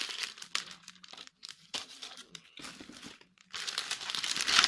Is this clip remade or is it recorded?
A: remade